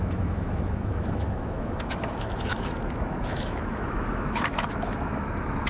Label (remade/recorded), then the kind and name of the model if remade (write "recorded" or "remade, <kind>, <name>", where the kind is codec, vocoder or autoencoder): remade, autoencoder, DAC-VAE